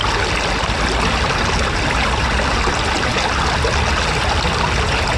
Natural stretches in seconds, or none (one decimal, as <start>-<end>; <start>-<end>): 0.0-5.2